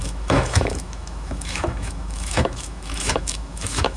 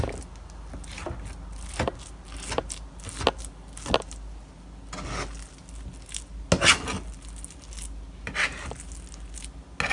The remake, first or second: first